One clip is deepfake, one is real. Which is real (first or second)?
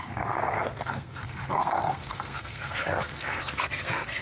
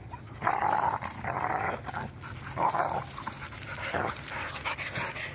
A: second